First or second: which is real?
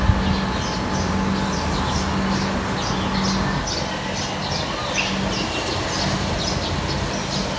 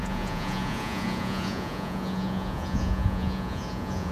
first